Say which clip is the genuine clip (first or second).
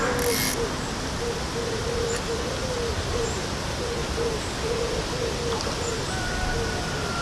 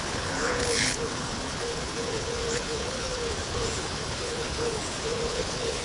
first